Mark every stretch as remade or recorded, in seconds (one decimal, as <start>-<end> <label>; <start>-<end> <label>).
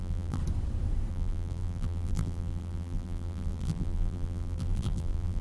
0.0-0.4 remade; 0.4-1.1 recorded; 1.1-5.4 remade